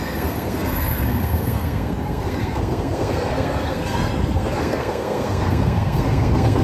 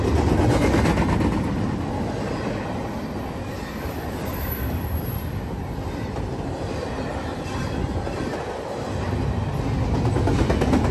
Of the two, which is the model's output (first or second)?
first